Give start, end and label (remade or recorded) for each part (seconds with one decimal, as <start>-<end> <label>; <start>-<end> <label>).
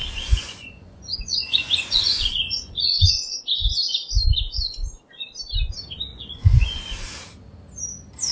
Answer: 0.0-3.4 remade; 3.4-6.1 recorded; 6.1-6.8 remade; 6.8-8.3 recorded